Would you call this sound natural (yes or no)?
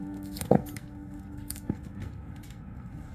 no